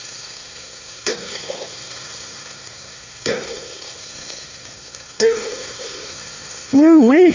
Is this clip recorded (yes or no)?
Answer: no